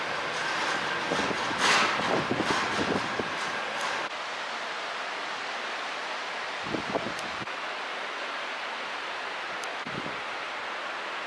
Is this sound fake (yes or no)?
no